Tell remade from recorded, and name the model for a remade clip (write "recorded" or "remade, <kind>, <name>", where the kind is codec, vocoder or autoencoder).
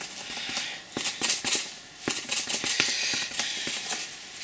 recorded